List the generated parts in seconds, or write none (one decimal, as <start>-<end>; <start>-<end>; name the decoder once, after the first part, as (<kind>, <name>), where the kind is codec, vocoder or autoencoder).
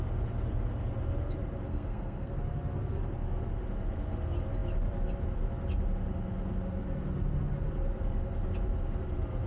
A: 1.7-2.3 (codec, SNAC)